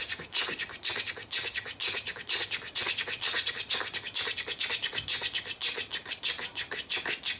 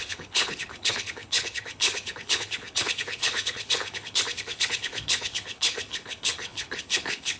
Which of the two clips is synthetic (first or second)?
second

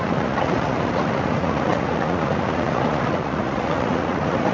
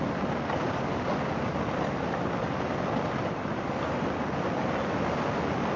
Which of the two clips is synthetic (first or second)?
first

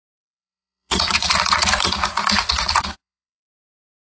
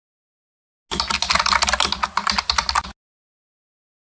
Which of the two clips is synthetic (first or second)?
first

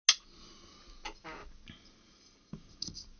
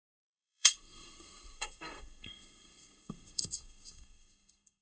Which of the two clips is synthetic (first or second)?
second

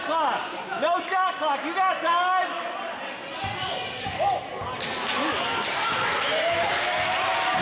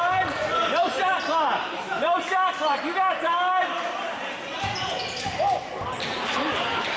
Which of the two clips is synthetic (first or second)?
second